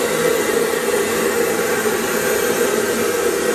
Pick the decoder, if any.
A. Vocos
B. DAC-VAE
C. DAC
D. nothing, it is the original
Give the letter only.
D